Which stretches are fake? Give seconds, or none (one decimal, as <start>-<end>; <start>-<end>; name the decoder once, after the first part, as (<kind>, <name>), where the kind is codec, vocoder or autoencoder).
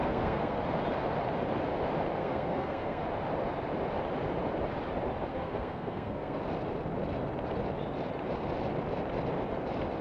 0.0-0.6 (codec, SNAC); 2.2-3.0; 5.3-6.4